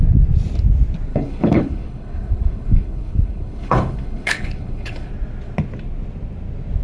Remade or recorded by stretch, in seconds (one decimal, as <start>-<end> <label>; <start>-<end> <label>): 0.0-1.1 recorded; 1.1-5.1 remade; 5.1-6.8 recorded